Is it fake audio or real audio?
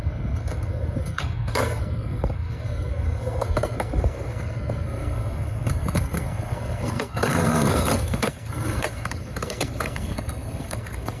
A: fake